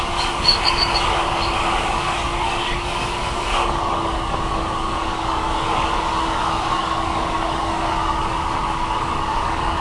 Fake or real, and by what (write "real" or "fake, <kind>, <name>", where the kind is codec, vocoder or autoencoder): fake, codec, DAC